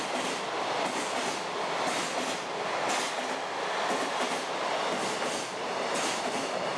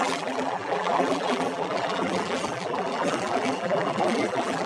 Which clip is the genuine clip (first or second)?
first